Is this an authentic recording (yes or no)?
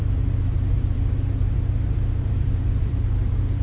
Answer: no